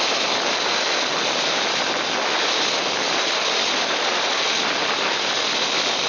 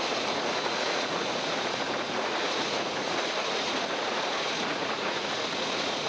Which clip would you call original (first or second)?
first